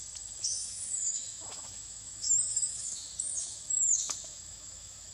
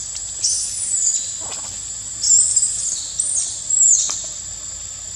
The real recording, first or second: second